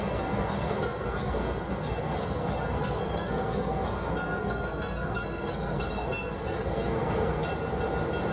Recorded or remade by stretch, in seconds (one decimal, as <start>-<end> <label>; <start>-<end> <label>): 0.0-7.5 remade; 7.5-8.3 recorded